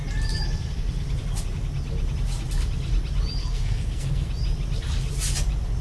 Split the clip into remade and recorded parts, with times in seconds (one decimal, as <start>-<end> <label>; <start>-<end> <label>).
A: 0.0-3.4 recorded; 3.4-4.3 remade; 4.3-5.8 recorded